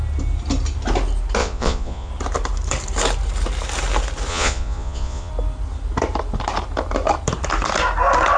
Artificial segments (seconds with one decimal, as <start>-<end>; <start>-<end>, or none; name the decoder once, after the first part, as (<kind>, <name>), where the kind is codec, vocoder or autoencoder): 1.4-2.1 (vocoder, Vocos); 4.3-5.3